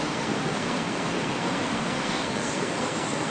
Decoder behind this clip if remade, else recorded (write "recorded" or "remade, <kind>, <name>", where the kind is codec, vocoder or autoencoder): remade, codec, SNAC